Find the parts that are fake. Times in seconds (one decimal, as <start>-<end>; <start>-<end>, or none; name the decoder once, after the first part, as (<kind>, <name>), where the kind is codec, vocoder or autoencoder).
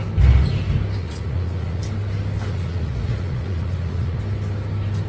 1.0-1.8 (vocoder, Vocos); 2.5-4.2